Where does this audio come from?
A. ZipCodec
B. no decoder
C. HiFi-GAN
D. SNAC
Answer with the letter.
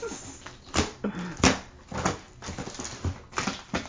B